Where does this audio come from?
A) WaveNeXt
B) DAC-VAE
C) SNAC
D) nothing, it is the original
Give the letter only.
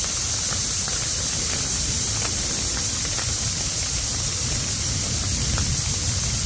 D